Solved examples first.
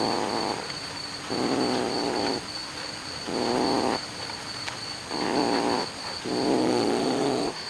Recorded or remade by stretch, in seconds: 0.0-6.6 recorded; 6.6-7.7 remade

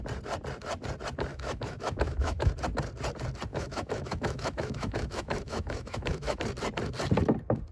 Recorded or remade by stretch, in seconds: 0.0-1.3 recorded; 1.3-2.5 remade; 2.5-3.5 recorded; 3.5-6.4 remade; 6.4-7.7 recorded

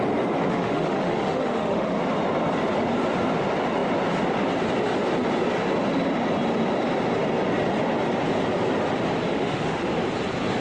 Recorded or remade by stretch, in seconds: 0.0-0.5 recorded; 0.5-2.0 remade; 2.0-9.3 recorded; 9.3-9.9 remade; 9.9-10.6 recorded

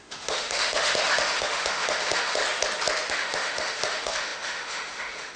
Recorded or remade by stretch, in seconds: 0.0-2.4 remade; 2.4-3.1 recorded; 3.1-5.4 remade

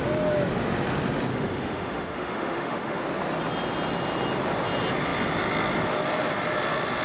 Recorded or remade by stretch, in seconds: 0.0-1.3 recorded; 1.3-3.0 remade; 3.0-7.0 recorded